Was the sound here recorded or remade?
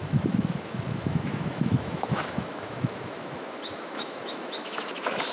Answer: remade